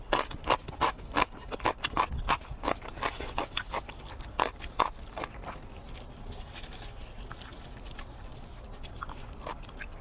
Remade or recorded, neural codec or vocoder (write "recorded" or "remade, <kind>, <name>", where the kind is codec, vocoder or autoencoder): recorded